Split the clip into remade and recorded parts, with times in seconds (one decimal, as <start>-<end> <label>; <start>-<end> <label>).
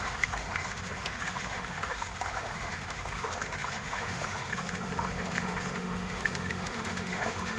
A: 0.0-7.6 remade